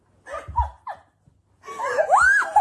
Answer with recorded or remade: recorded